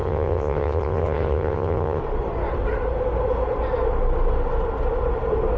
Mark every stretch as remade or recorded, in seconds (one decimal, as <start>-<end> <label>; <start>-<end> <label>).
0.0-2.0 remade; 2.0-5.6 recorded

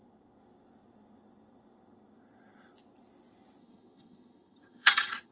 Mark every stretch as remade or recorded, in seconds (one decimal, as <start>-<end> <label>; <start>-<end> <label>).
0.0-3.6 recorded; 3.6-5.3 remade

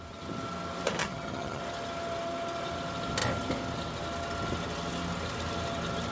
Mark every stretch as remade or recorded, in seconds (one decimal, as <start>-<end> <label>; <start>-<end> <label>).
0.0-1.0 recorded; 1.0-1.6 remade; 1.6-6.1 recorded